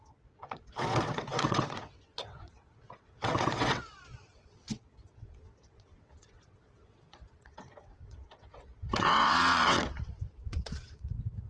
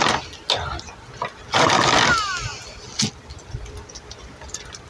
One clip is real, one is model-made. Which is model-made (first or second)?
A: first